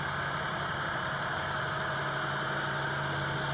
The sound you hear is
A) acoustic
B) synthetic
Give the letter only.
A